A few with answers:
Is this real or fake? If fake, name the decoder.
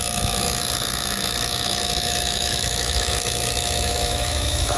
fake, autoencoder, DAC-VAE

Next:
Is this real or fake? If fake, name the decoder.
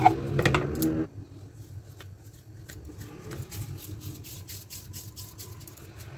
real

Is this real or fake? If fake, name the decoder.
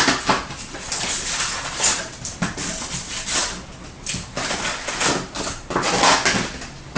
real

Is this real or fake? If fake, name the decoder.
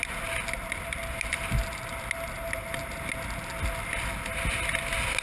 real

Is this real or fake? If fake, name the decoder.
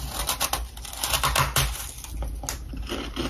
real